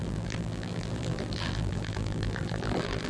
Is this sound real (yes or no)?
no